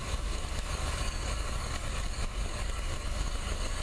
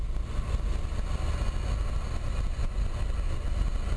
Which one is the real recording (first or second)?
second